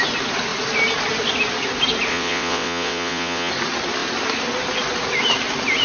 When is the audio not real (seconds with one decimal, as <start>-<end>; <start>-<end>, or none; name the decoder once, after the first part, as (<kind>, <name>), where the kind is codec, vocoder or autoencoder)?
2.1-3.5 (vocoder, WaveNeXt)

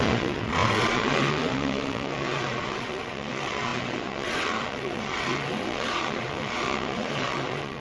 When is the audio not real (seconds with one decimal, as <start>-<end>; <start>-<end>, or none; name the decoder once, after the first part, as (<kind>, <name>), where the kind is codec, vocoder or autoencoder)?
0.0-7.8 (vocoder, WaveNeXt)

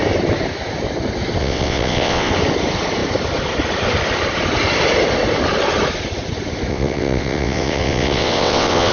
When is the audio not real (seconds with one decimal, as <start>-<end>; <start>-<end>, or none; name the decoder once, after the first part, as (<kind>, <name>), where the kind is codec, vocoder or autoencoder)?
1.4-2.3 (vocoder, WaveNeXt); 6.7-8.9

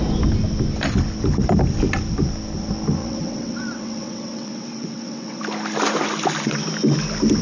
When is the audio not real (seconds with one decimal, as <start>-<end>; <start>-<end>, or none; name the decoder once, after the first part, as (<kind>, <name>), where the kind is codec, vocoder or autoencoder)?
3.0-5.4 (vocoder, WaveNeXt)

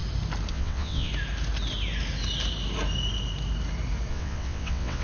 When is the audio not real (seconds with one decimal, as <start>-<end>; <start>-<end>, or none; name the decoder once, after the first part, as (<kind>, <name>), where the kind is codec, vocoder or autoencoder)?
0.5-1.1 (vocoder, WaveNeXt); 4.1-5.0

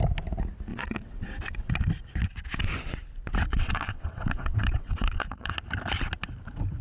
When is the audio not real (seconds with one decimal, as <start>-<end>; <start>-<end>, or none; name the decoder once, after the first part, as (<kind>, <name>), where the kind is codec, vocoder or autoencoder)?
0.7-1.7 (vocoder, WaveNeXt); 3.5-5.5

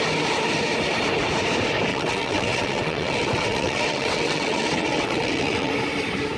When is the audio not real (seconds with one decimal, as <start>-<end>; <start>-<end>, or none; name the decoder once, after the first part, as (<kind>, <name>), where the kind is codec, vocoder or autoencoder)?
1.9-5.7 (vocoder, WaveNeXt)

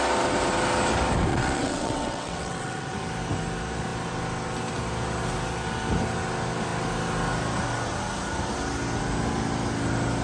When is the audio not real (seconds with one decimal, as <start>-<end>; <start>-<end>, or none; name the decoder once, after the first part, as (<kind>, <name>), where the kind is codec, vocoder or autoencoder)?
1.3-2.9 (vocoder, WaveNeXt)